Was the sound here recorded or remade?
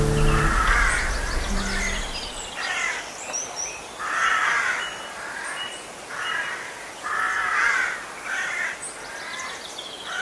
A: recorded